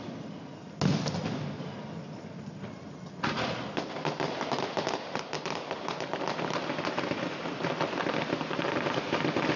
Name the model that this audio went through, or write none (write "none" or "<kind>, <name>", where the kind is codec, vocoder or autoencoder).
none